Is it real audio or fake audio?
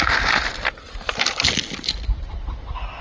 real